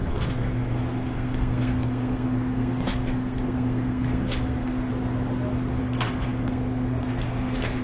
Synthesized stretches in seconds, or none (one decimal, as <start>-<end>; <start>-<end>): 0.0-4.9; 5.8-7.8